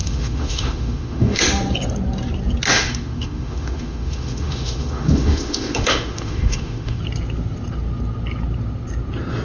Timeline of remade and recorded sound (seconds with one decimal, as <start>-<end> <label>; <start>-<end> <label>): 0.0-1.4 remade; 1.4-2.7 recorded; 2.7-7.0 remade; 7.0-9.4 recorded